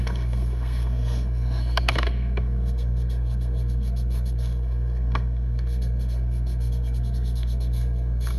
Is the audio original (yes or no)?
no